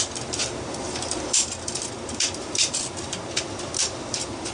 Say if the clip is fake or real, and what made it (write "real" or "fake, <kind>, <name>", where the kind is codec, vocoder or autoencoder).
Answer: fake, vocoder, BigVGAN v2